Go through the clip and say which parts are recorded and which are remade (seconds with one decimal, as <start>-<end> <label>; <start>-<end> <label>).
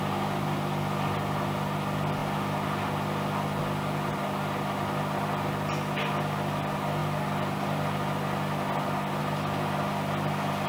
0.0-10.7 recorded